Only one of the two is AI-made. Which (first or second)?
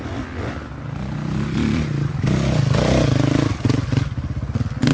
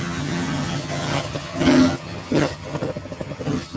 second